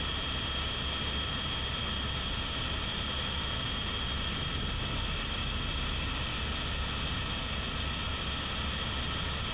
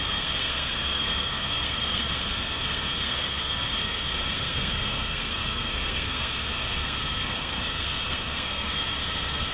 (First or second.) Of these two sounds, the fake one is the second